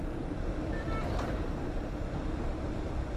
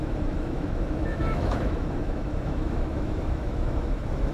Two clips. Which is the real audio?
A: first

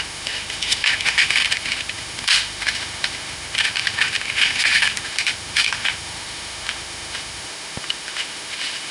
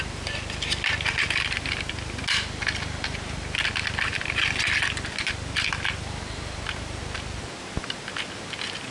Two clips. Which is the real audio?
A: second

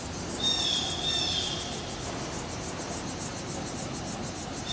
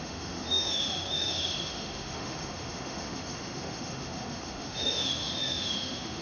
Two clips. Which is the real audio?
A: first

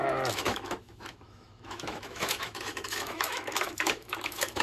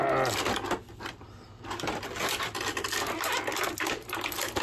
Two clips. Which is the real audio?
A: second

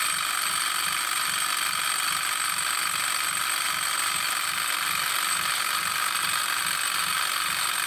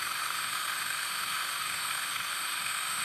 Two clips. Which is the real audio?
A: first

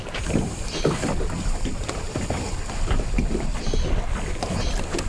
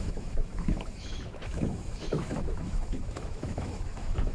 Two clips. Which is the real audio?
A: first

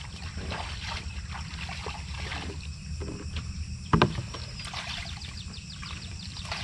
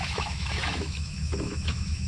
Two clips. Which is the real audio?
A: first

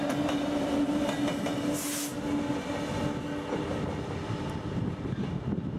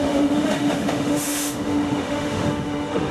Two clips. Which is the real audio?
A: first